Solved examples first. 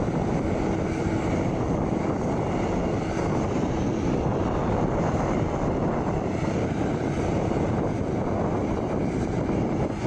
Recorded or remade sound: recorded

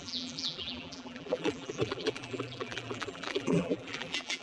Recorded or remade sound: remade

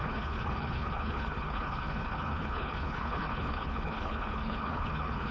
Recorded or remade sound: remade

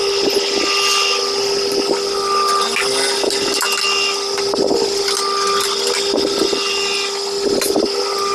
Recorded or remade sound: recorded